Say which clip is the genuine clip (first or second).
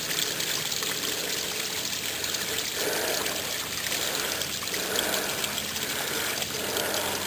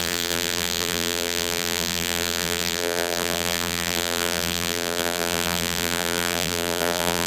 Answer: first